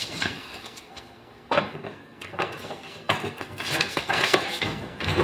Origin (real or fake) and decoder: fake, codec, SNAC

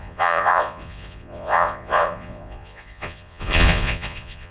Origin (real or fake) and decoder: fake, vocoder, Vocos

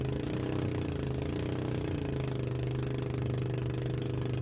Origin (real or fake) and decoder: real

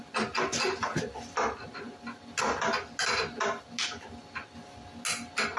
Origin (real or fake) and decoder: real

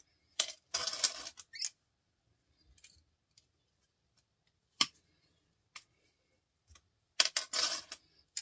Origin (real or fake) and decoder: real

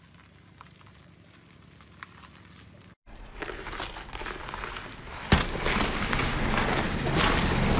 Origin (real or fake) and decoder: real